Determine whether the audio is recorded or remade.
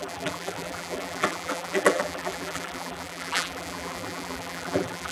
remade